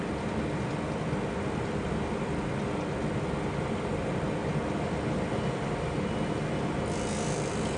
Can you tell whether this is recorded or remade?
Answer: recorded